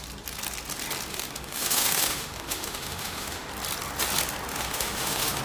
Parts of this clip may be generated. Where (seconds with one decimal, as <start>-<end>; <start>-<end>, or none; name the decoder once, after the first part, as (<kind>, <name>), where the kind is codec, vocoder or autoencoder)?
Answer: 1.1-3.5 (autoencoder, DAC-VAE); 4.5-5.4